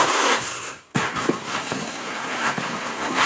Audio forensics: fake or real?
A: fake